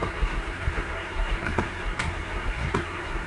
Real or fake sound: fake